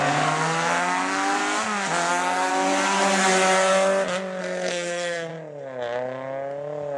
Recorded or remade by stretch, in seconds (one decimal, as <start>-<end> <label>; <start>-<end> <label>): 0.0-1.4 remade; 1.4-2.1 recorded; 2.1-2.5 remade; 2.5-4.4 recorded; 4.4-5.3 remade; 5.3-7.0 recorded